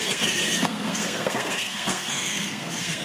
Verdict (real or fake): fake